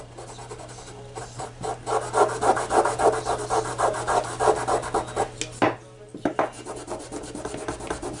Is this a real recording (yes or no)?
yes